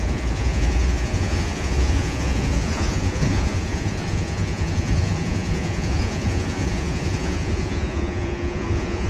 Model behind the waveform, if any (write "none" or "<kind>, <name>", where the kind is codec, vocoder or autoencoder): vocoder, Vocos